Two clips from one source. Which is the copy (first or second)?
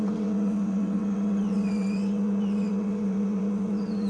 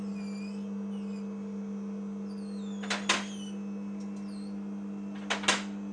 first